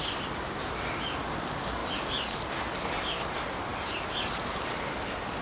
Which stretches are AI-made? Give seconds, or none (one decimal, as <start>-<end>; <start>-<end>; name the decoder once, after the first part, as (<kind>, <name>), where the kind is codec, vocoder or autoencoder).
none